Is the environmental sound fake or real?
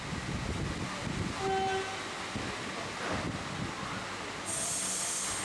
real